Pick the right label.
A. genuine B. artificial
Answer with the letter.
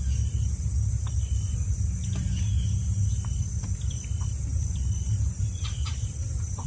A